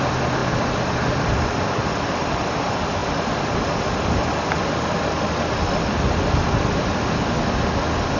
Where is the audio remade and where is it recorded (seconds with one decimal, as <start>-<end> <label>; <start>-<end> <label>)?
0.0-8.2 recorded